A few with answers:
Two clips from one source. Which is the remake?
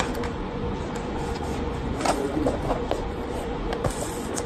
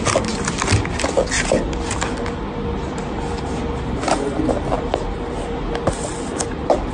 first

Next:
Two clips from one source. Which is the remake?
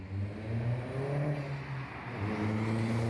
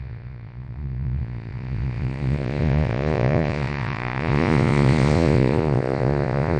second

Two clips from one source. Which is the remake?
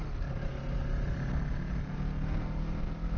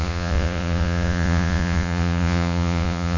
second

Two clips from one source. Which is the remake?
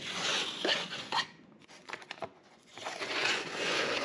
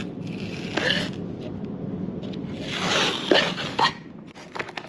first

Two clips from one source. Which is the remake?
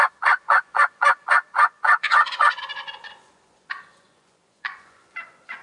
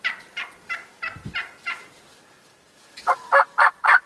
first